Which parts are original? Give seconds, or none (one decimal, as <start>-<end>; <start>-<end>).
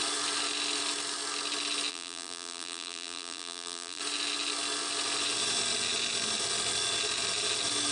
0.0-1.9; 4.0-7.9